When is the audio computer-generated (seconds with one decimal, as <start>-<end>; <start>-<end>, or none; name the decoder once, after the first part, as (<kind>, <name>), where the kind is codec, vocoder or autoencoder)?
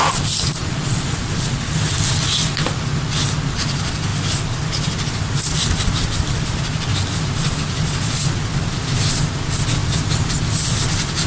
0.6-1.2 (vocoder, BigVGAN v2); 9.8-10.6